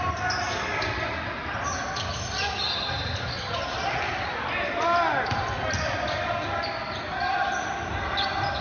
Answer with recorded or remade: recorded